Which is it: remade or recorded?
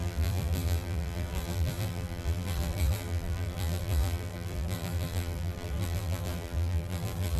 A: remade